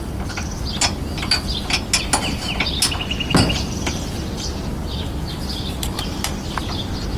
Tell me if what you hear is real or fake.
real